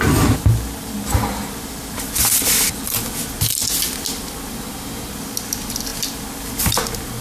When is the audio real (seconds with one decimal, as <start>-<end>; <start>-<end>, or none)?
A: 0.0-7.2